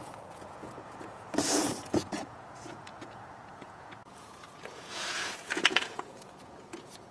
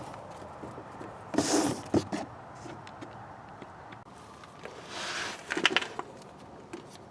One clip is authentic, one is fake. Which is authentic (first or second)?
second